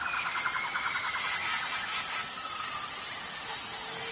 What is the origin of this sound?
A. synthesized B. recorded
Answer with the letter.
B